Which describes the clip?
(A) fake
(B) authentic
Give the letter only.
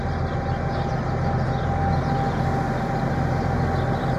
B